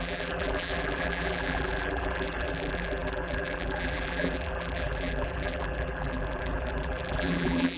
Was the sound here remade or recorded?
remade